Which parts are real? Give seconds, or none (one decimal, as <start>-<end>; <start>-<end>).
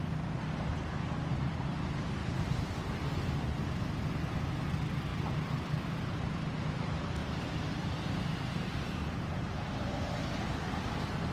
0.0-1.3; 1.8-2.2; 2.7-5.1; 6.2-7.2; 9.9-11.3